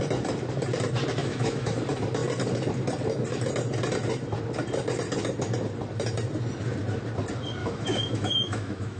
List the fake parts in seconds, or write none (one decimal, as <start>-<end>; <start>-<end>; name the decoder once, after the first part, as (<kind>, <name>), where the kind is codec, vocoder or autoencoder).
1.2-1.7 (autoencoder, DAC-VAE); 7.6-9.0